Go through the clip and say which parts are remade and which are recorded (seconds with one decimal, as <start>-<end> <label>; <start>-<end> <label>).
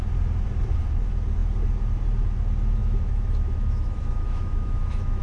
0.0-2.8 recorded; 2.8-5.2 remade